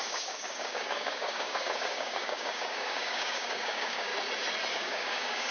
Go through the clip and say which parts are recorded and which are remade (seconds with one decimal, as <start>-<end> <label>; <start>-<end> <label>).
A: 0.0-4.1 remade; 4.1-4.7 recorded; 4.7-5.5 remade